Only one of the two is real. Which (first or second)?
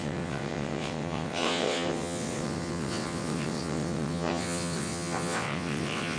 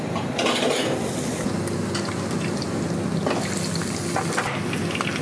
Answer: second